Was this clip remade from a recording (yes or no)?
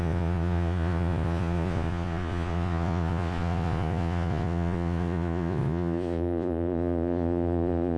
yes